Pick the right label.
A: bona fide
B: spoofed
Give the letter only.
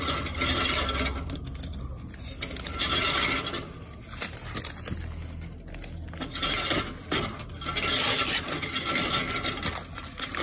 A